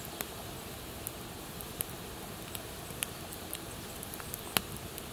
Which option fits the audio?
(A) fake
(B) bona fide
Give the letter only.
B